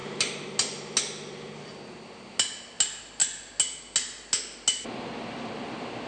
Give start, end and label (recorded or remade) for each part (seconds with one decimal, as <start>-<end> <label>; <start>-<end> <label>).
0.0-6.1 recorded